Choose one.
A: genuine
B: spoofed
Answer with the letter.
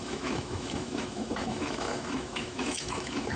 B